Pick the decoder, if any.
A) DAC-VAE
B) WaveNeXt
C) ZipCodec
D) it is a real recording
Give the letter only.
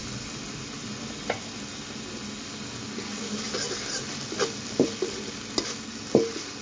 D